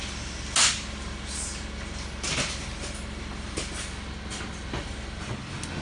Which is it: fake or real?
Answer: real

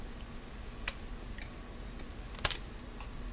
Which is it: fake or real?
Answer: real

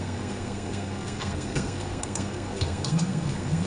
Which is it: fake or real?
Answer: fake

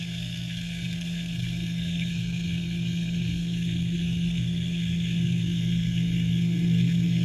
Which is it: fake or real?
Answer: fake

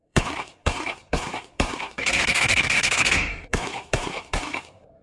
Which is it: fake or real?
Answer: fake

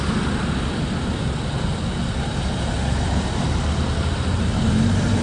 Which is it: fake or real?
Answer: real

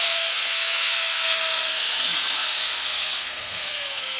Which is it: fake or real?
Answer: fake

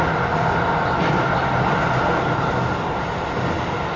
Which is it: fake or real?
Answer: real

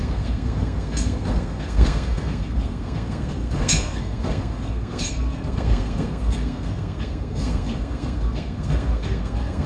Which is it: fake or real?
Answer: fake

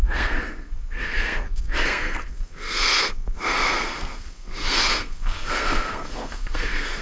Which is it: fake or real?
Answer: fake